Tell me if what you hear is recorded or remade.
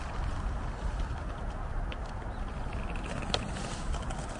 recorded